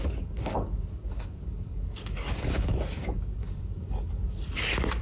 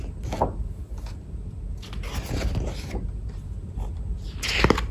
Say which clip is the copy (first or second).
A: first